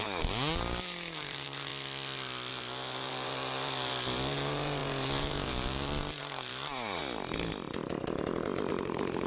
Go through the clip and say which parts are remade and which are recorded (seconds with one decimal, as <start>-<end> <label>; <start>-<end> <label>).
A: 0.0-1.7 remade; 1.7-2.5 recorded; 2.5-7.0 remade; 7.0-8.7 recorded; 8.7-9.3 remade

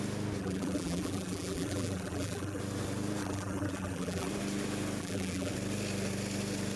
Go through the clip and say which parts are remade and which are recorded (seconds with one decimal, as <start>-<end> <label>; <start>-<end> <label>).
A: 0.0-0.4 recorded; 0.4-2.6 remade; 2.6-3.2 recorded; 3.2-4.3 remade; 4.3-5.0 recorded; 5.0-5.5 remade; 5.5-6.8 recorded

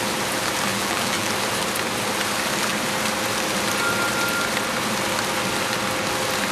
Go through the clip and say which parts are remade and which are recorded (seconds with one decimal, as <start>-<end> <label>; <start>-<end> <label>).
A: 0.0-0.7 recorded; 0.7-1.3 remade; 1.3-6.5 recorded

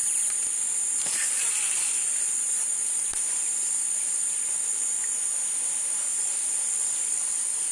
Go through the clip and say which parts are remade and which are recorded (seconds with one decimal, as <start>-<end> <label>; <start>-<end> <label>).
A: 0.0-4.3 remade; 4.3-6.1 recorded; 6.1-7.7 remade

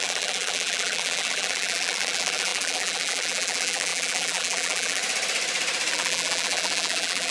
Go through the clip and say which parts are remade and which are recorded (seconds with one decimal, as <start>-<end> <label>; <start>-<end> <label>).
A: 0.0-5.0 remade; 5.0-5.9 recorded; 5.9-7.3 remade

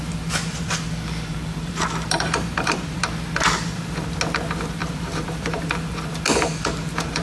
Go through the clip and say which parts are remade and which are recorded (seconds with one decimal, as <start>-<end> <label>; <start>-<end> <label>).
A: 0.0-1.3 recorded; 1.3-3.0 remade; 3.0-4.8 recorded; 4.8-5.6 remade; 5.6-6.5 recorded; 6.5-7.2 remade

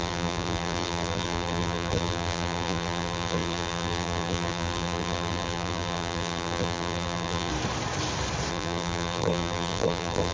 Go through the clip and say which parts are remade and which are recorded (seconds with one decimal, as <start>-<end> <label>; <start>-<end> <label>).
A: 0.0-7.5 remade; 7.5-8.5 recorded; 8.5-10.3 remade

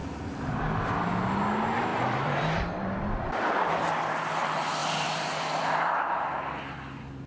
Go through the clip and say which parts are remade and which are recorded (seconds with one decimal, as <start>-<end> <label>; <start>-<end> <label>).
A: 0.0-1.9 recorded; 1.9-3.7 remade; 3.7-4.8 recorded; 4.8-6.0 remade; 6.0-7.3 recorded